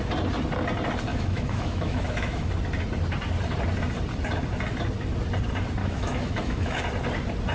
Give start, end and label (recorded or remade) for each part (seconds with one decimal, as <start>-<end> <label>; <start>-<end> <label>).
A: 0.0-1.1 recorded; 1.1-2.5 remade; 2.5-5.8 recorded; 5.8-6.8 remade; 6.8-7.5 recorded